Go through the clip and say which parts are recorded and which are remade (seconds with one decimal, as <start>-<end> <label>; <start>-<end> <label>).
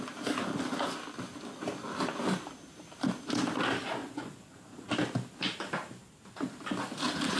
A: 0.0-4.0 recorded; 4.0-4.9 remade; 4.9-7.4 recorded